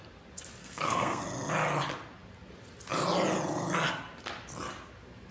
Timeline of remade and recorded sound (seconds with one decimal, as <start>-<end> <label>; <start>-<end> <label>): 0.0-0.6 recorded; 0.6-1.2 remade; 1.2-5.3 recorded